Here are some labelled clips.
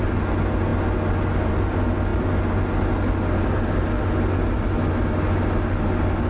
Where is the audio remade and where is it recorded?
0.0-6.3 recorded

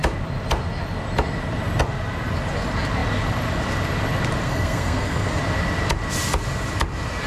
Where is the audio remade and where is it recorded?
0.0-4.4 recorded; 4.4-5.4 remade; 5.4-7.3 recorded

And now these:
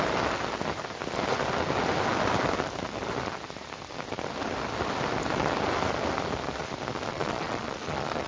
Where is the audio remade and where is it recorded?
0.0-7.1 recorded; 7.1-8.3 remade